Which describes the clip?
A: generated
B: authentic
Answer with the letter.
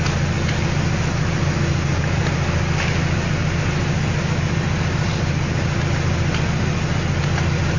B